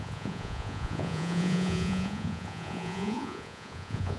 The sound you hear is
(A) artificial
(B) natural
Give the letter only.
A